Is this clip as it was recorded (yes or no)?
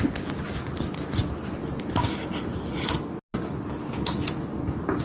yes